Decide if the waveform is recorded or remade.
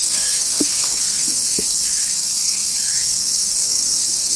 remade